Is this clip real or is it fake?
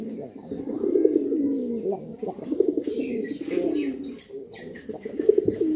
real